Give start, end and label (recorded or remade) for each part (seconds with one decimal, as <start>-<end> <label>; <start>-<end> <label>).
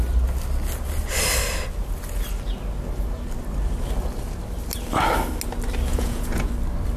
0.0-5.9 recorded; 5.9-6.5 remade; 6.5-7.0 recorded